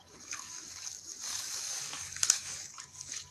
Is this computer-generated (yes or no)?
yes